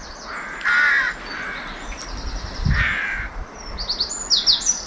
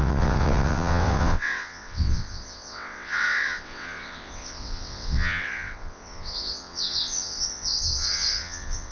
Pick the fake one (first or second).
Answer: second